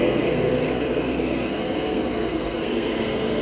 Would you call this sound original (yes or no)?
no